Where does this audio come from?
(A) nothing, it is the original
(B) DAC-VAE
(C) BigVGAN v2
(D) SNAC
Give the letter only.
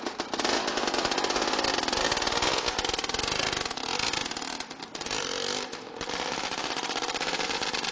A